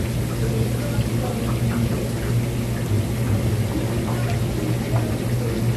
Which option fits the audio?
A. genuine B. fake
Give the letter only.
A